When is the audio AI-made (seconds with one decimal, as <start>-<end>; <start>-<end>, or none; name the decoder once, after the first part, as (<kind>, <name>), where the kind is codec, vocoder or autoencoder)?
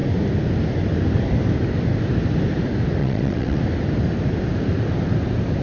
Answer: 3.0-3.6 (vocoder, WaveNeXt)